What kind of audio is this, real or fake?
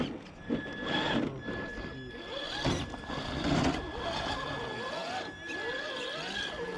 real